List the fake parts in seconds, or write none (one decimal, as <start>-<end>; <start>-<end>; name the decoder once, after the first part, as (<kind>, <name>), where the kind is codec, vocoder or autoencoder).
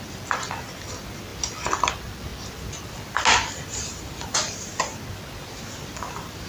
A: none